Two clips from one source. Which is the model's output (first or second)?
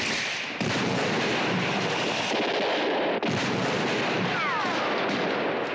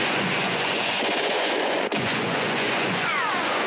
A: second